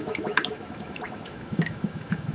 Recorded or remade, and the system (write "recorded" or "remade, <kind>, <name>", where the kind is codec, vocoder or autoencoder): remade, autoencoder, DAC-VAE